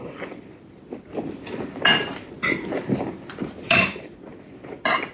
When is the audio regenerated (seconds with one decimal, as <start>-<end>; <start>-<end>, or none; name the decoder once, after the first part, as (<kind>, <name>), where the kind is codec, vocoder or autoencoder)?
0.0-1.1 (vocoder, BigVGAN v2); 3.7-4.3